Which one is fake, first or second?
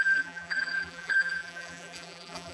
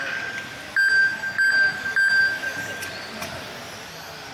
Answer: first